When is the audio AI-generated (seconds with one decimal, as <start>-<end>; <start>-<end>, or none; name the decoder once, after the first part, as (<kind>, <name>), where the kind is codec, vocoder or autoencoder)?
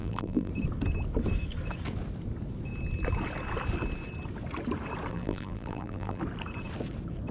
0.0-0.5 (vocoder, BigVGAN v2); 5.1-6.2